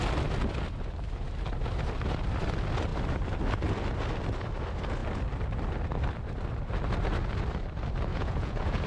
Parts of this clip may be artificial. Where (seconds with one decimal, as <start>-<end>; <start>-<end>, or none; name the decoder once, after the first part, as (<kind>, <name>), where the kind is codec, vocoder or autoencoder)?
8.1-8.9 (vocoder, Vocos)

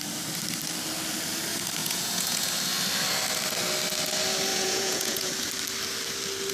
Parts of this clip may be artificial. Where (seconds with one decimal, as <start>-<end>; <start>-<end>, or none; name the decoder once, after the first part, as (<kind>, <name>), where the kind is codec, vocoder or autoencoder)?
1.8-2.5 (vocoder, Vocos); 4.5-5.3

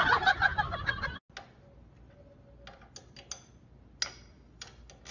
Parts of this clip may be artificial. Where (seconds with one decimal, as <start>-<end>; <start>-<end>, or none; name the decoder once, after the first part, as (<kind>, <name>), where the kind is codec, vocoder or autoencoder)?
none